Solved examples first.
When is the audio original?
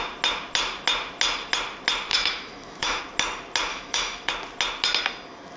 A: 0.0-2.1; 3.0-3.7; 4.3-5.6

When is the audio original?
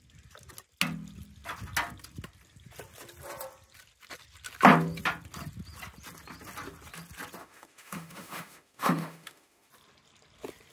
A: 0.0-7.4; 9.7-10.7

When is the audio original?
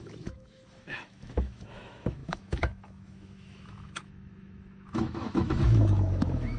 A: none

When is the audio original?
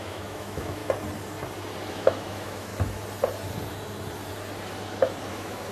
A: 0.8-1.9; 2.7-5.3